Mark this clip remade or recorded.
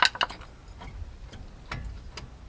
recorded